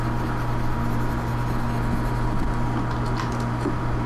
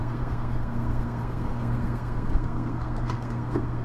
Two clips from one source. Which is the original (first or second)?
first